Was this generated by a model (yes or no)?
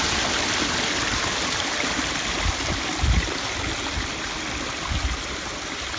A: no